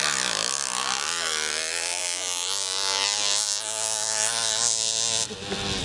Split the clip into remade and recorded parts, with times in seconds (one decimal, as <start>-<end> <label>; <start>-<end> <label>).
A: 0.0-2.0 remade; 2.0-5.8 recorded